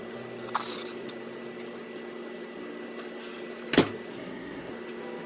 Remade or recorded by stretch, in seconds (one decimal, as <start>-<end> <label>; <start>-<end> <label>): 0.0-4.1 recorded; 4.1-4.7 remade; 4.7-5.3 recorded